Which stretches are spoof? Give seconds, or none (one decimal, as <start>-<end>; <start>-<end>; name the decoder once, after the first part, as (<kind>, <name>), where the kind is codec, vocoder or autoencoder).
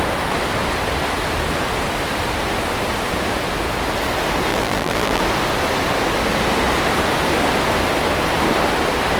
4.5-5.2 (vocoder, BigVGAN v2)